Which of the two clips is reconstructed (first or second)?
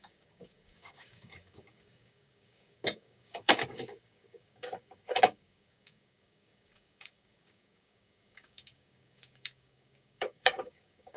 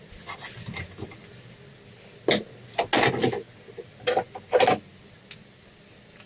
first